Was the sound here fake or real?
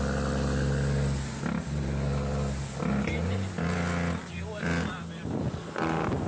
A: real